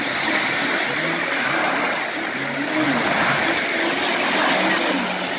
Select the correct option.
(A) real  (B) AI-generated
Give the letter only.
A